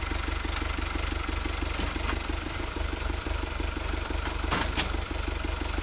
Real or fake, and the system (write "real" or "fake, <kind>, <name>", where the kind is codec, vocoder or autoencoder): real